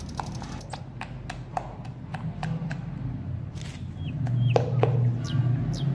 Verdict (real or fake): real